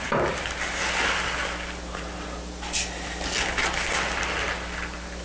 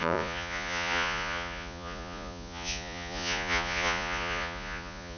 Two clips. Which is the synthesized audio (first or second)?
second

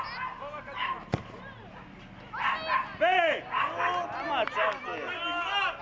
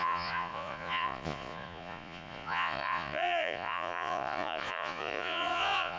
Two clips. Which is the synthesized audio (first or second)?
second